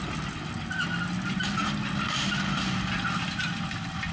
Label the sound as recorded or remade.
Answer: recorded